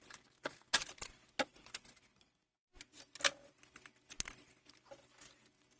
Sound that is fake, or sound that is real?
real